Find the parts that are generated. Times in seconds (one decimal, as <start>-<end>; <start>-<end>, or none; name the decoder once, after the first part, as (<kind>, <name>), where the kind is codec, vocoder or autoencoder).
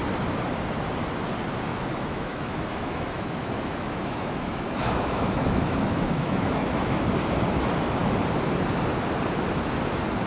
1.7-7.0 (autoencoder, DAC-VAE)